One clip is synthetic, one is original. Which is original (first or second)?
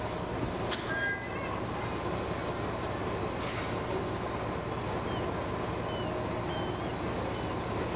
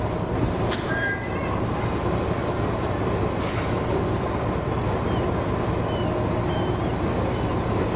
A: first